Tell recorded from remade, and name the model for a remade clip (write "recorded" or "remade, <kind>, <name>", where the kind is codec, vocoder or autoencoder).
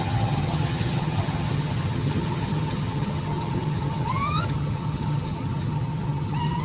remade, vocoder, HiFi-GAN